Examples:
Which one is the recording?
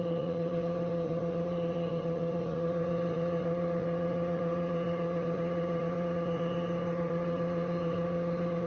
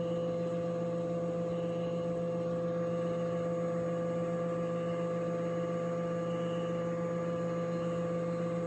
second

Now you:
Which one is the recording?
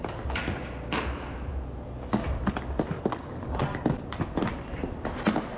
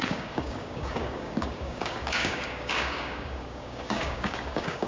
first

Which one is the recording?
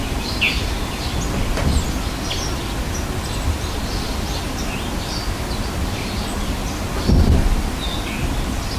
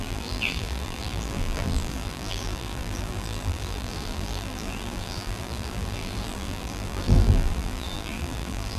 first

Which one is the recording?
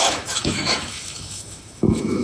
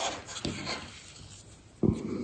second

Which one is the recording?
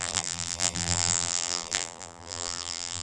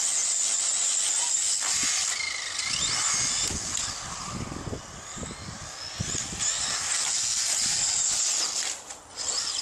second